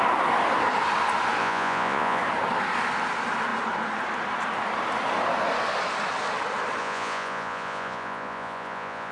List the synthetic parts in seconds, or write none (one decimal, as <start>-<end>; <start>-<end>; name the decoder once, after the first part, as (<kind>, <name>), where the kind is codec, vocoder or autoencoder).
1.4-2.2 (vocoder, Vocos); 6.8-9.1